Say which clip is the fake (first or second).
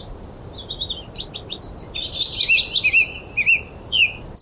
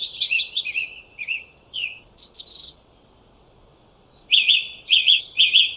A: second